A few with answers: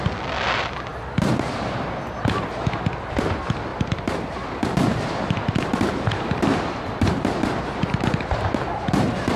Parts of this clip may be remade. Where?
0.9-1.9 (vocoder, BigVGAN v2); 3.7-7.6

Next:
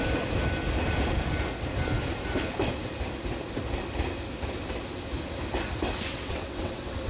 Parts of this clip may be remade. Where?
6.1-7.1 (vocoder, WaveNeXt)